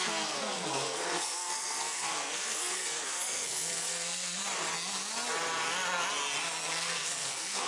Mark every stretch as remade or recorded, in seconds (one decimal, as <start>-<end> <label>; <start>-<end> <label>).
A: 0.0-4.4 remade; 4.4-6.7 recorded; 6.7-7.7 remade